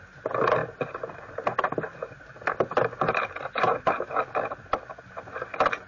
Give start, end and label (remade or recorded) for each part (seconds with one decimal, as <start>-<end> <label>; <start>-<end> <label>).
0.0-5.9 recorded